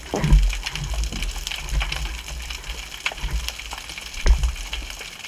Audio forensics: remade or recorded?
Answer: recorded